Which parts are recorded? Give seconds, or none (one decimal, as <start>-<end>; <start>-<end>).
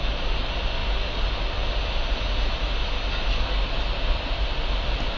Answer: 0.0-5.2